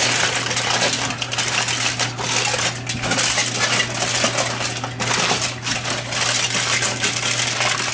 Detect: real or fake real